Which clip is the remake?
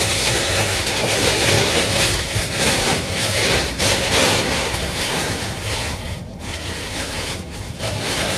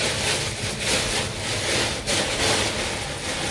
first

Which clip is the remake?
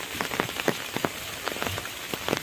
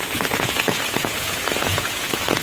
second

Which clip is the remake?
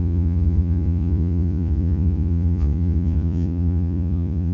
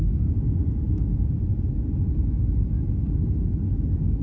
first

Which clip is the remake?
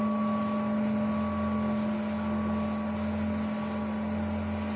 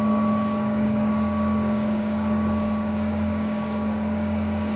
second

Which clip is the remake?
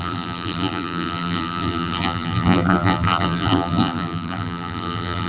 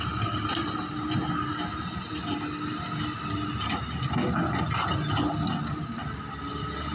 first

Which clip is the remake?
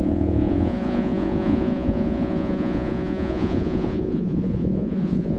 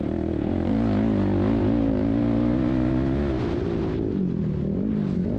first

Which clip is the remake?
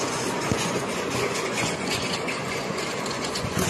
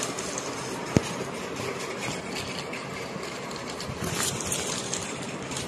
first